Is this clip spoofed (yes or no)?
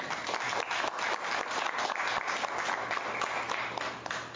no